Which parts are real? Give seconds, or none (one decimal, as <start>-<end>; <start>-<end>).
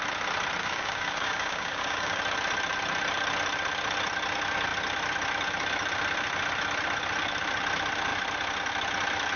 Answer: 0.0-0.6; 2.2-9.4